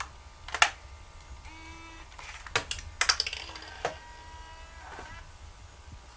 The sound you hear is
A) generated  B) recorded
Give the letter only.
B